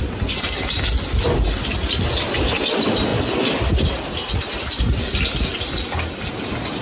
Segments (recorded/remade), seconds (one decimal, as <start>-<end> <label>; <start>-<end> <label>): 0.0-6.8 recorded